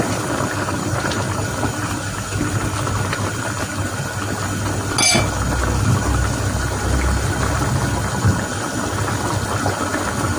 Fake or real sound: real